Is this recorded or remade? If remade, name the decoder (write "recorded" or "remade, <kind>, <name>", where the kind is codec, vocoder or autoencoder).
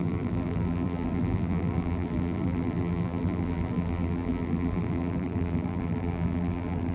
remade, vocoder, BigVGAN v2